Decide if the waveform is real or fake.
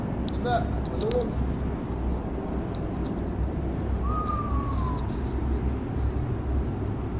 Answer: real